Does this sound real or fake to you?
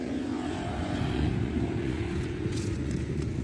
fake